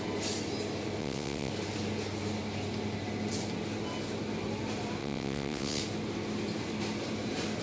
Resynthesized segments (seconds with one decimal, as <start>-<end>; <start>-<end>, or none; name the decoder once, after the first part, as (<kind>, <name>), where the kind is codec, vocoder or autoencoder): 1.0-1.5 (vocoder, WaveNeXt); 5.0-5.8